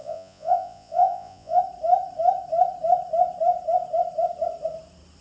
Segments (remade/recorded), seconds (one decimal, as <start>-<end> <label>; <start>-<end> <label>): 0.0-1.6 remade; 1.6-5.2 recorded